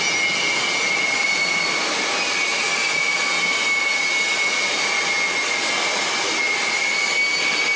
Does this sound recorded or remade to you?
recorded